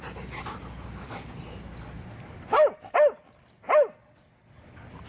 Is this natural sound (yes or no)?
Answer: yes